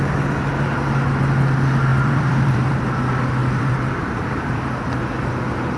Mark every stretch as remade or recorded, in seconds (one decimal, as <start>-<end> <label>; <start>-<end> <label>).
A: 0.0-1.9 recorded; 1.9-2.8 remade; 2.8-3.4 recorded; 3.4-4.7 remade; 4.7-5.8 recorded